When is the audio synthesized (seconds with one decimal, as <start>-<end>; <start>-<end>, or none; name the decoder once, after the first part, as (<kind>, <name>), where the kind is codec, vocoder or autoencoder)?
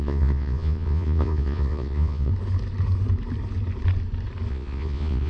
0.0-2.3 (vocoder, Vocos); 4.5-5.3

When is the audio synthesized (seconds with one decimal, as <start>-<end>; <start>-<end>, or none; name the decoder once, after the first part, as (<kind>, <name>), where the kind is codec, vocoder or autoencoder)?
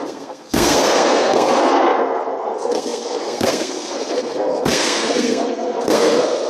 0.0-6.5 (codec, SNAC)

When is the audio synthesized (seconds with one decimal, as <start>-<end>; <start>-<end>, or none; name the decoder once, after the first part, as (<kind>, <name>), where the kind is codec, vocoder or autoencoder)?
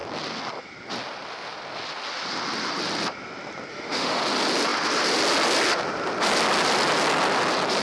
3.7-4.2 (autoencoder, DAC-VAE)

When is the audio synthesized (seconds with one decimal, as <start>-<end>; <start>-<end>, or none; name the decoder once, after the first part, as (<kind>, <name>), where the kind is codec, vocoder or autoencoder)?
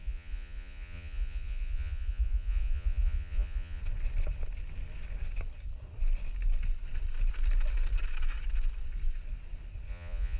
0.0-3.8 (vocoder, Vocos); 9.9-10.4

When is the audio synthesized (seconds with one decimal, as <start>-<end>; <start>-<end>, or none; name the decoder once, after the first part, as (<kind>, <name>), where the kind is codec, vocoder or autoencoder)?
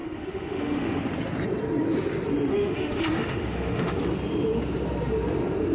0.0-1.0 (autoencoder, DAC-VAE); 2.5-4.0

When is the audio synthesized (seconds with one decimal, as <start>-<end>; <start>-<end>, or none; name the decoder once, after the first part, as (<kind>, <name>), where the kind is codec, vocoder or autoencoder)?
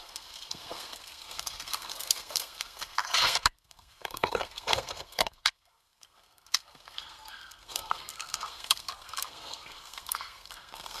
0.0-11.0 (codec, SNAC)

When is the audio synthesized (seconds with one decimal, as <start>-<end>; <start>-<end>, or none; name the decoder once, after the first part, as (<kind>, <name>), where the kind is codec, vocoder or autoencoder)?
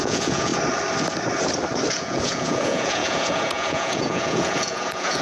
0.0-0.5 (vocoder, Vocos); 1.9-5.2